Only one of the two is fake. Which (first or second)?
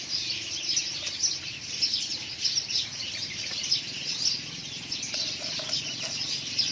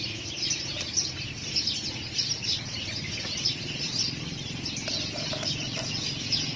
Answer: first